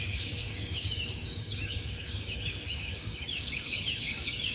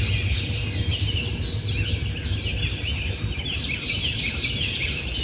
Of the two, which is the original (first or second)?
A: second